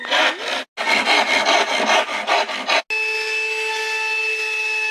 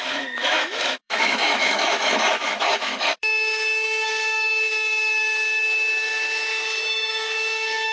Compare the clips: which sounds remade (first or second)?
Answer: second